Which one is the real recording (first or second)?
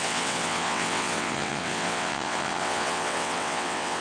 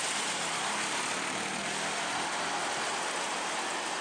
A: second